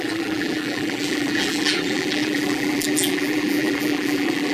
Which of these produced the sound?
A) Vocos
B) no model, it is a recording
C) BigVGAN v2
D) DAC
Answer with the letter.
C